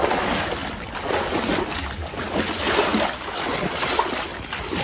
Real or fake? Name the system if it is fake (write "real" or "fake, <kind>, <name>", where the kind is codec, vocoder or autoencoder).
real